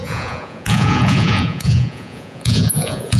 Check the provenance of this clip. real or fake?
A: fake